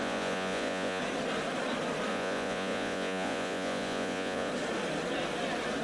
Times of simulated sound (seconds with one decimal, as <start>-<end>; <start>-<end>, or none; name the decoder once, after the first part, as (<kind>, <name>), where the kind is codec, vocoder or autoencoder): 0.0-1.0 (vocoder, Vocos); 2.1-4.5